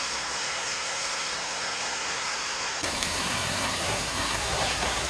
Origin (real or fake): fake